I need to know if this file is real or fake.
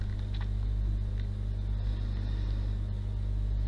real